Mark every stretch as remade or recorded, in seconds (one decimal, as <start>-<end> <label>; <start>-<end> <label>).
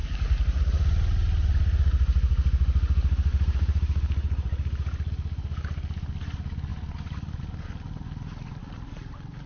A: 0.0-0.6 remade; 0.6-3.3 recorded; 3.3-5.1 remade; 5.1-8.6 recorded; 8.6-9.5 remade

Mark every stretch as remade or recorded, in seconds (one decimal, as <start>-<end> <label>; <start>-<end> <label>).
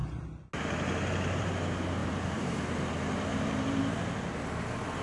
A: 0.0-2.0 recorded; 2.0-2.9 remade; 2.9-3.3 recorded; 3.3-3.8 remade; 3.8-5.0 recorded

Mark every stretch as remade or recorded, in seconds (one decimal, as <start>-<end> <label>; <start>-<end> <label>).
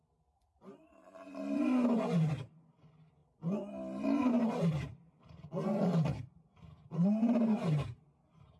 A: 0.0-8.6 recorded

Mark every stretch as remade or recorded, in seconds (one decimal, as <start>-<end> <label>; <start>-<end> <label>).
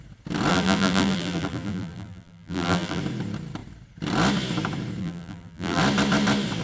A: 0.0-0.5 recorded; 0.5-3.0 remade; 3.0-5.0 recorded; 5.0-5.8 remade; 5.8-6.6 recorded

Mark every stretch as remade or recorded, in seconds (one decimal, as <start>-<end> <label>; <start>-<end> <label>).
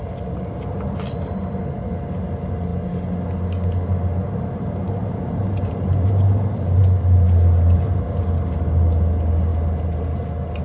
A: 0.0-5.0 recorded; 5.0-6.8 remade; 6.8-10.6 recorded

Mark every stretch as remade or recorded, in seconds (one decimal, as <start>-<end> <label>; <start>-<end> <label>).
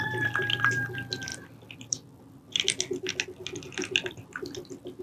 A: 0.0-5.0 recorded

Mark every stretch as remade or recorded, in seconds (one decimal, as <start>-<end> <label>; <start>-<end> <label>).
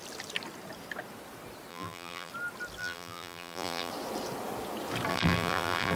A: 0.0-1.7 recorded; 1.7-2.3 remade; 2.3-2.8 recorded; 2.8-3.9 remade; 3.9-5.1 recorded; 5.1-6.0 remade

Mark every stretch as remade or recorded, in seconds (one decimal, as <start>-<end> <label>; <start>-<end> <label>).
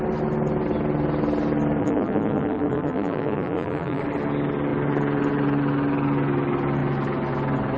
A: 0.0-1.8 recorded; 1.8-4.0 remade; 4.0-7.8 recorded